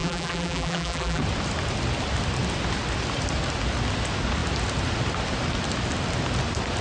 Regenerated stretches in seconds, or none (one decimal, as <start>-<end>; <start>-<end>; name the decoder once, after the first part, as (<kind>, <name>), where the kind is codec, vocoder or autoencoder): 0.0-1.2 (vocoder, BigVGAN v2)